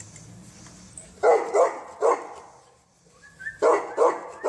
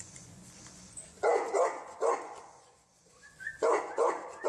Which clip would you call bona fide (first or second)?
first